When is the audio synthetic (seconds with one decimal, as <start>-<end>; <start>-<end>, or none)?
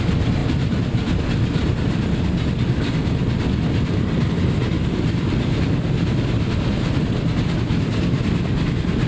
none